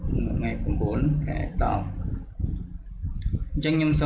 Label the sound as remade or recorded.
recorded